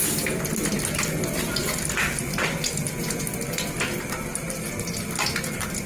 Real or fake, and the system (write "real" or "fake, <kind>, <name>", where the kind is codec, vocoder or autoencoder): real